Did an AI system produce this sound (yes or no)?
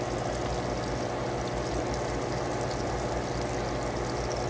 no